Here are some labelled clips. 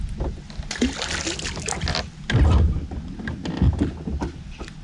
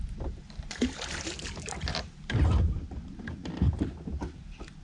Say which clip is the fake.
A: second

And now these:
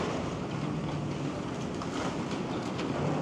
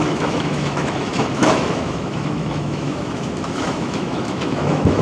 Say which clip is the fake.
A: second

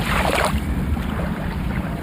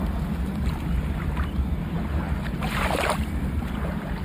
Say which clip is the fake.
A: first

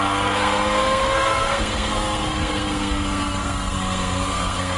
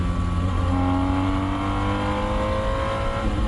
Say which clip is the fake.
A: first